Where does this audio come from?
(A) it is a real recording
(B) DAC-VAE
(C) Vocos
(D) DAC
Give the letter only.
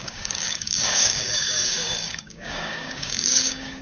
D